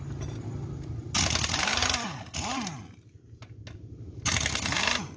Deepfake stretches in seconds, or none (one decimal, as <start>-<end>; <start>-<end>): none